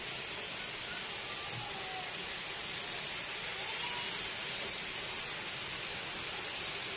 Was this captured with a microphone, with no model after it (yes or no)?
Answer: yes